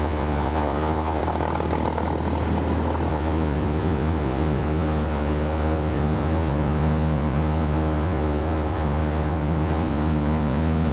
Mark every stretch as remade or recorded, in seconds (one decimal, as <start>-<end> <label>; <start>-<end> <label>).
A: 0.0-1.2 remade; 1.2-3.1 recorded; 3.1-10.9 remade